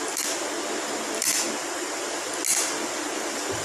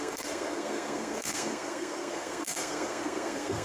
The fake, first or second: second